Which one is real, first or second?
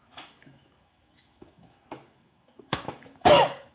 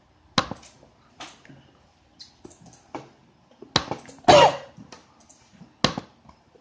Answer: second